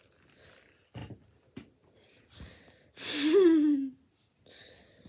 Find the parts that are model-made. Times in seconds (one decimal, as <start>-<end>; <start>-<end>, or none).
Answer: none